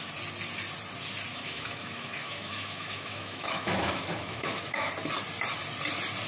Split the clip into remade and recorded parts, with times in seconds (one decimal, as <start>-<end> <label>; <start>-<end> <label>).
0.0-1.3 recorded; 1.3-4.9 remade; 4.9-6.3 recorded